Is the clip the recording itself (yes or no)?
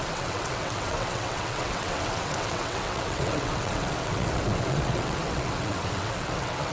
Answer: no